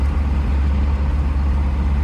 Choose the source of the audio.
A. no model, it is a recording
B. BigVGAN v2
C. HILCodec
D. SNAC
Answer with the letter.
A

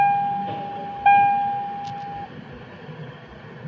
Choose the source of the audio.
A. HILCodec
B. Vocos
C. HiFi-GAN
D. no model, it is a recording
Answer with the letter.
D